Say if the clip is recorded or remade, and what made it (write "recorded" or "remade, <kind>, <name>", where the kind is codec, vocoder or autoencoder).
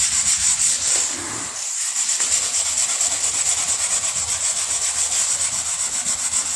recorded